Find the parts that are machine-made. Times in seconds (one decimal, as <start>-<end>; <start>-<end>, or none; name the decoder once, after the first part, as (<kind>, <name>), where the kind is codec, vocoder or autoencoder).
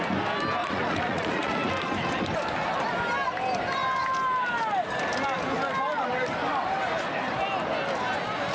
0.6-1.7 (vocoder, Vocos)